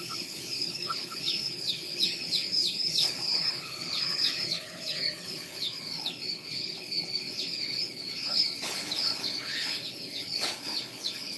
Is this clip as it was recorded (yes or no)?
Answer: no